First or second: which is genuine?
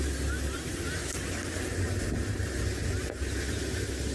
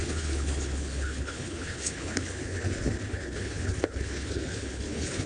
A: first